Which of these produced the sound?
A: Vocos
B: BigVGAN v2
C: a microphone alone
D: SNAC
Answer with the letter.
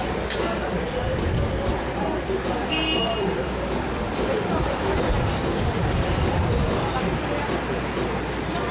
B